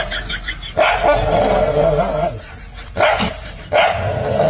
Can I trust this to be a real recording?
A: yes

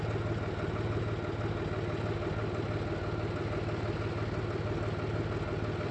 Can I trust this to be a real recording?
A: yes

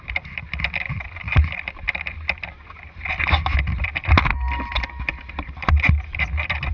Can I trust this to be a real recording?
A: yes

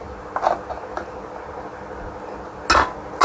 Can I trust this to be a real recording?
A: yes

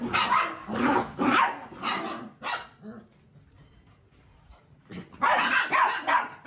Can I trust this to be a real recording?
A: yes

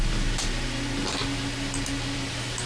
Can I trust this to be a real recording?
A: yes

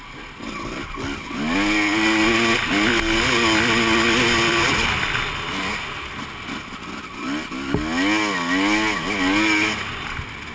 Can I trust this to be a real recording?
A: yes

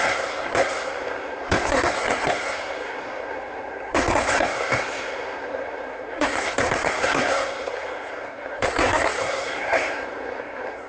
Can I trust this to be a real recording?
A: no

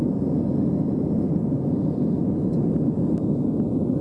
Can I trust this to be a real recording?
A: yes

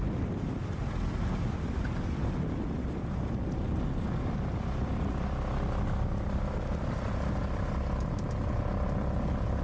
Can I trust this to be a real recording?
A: yes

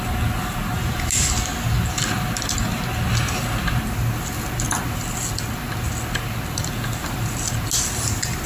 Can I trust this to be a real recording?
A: yes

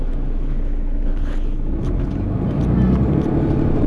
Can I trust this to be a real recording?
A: yes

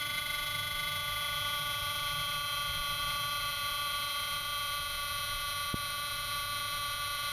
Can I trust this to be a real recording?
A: no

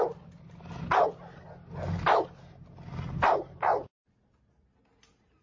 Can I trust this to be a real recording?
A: yes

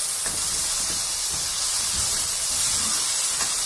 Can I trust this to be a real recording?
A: yes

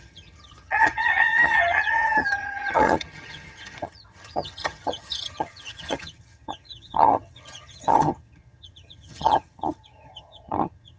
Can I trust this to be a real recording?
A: no